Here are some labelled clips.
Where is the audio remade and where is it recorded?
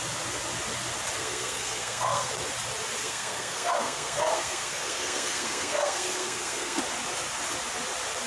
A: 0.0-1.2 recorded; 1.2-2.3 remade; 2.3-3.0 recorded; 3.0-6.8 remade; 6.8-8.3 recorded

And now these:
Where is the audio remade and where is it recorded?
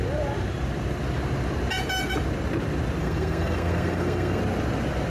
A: 0.0-3.0 recorded; 3.0-4.4 remade; 4.4-5.1 recorded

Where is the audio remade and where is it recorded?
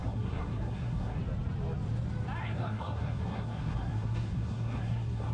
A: 0.0-1.2 remade; 1.2-2.4 recorded; 2.4-5.3 remade